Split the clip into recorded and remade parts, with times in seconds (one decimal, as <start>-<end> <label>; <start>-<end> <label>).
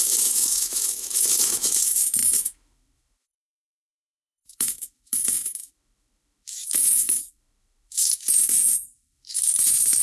0.0-10.0 remade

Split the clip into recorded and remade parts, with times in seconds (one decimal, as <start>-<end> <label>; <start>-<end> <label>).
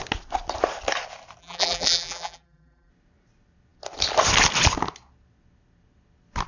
0.0-1.4 recorded; 1.4-2.9 remade; 2.9-6.5 recorded